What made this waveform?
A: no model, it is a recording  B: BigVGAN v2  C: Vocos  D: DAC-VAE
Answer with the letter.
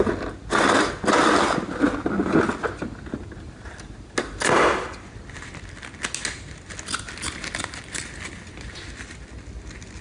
A